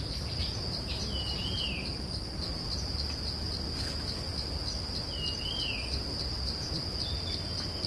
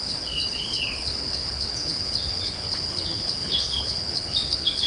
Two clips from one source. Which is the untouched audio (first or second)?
first